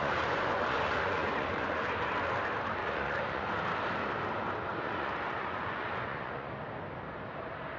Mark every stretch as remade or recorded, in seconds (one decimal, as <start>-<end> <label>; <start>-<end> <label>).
0.0-1.8 remade; 1.8-2.8 recorded; 2.8-3.5 remade; 3.5-4.7 recorded; 4.7-6.6 remade; 6.6-7.8 recorded

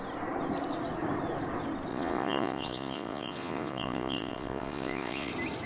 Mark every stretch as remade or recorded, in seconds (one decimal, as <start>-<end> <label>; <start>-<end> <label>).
0.0-1.9 recorded; 1.9-5.3 remade; 5.3-5.7 recorded

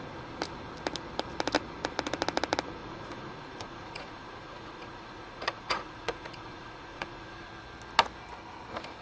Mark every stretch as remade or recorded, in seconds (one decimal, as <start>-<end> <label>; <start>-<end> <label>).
0.0-2.8 recorded; 2.8-7.5 remade; 7.5-9.0 recorded

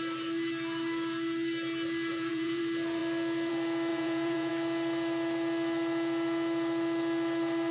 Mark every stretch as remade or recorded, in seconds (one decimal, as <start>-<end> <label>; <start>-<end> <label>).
0.0-2.1 recorded; 2.1-2.6 remade; 2.6-3.9 recorded; 3.9-4.5 remade; 4.5-7.7 recorded

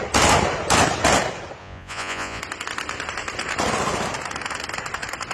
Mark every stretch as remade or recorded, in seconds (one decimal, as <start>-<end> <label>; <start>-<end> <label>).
0.0-1.6 recorded; 1.6-2.4 remade; 2.4-5.3 recorded

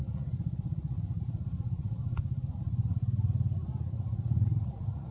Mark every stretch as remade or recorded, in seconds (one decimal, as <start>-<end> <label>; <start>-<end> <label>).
0.0-2.0 remade; 2.0-2.5 recorded; 2.5-3.0 remade; 3.0-3.8 recorded; 3.8-5.1 remade